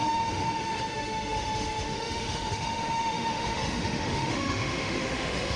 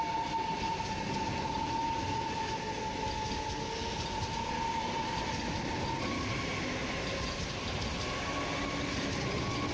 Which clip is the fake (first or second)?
first